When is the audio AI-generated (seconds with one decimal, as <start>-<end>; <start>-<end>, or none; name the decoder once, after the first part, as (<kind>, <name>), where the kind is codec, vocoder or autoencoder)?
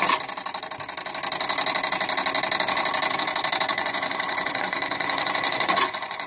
3.7-6.3 (vocoder, Vocos)